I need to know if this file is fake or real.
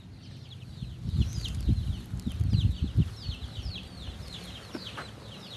real